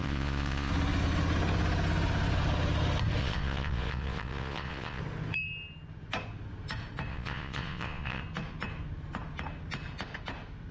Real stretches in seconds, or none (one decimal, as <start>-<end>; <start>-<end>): 0.7-3.2; 5.0-7.1; 8.2-10.7